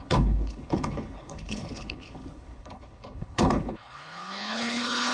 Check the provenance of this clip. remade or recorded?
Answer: remade